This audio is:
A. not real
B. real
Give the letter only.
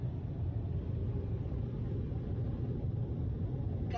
B